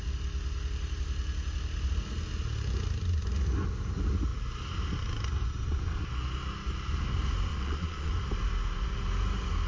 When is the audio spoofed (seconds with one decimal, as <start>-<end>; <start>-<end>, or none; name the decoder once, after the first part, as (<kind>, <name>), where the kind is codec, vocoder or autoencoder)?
7.5-8.1 (vocoder, Vocos)